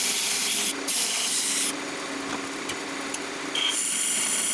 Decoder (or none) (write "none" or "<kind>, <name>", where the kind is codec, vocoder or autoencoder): none